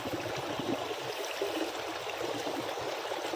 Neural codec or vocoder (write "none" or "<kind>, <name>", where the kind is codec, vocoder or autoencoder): none